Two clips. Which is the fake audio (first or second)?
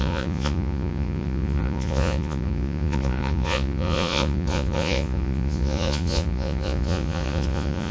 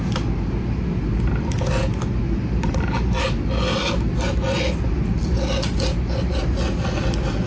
first